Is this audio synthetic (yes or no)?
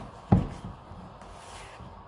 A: no